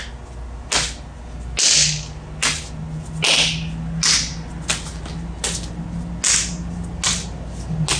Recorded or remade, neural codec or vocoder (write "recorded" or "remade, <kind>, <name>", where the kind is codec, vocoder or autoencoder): recorded